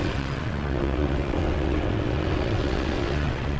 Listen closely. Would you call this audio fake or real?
fake